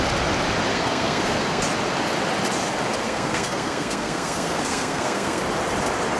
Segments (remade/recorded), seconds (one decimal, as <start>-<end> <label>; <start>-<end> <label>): 0.0-0.7 recorded; 0.7-1.6 remade; 1.6-3.0 recorded; 3.0-5.4 remade; 5.4-6.2 recorded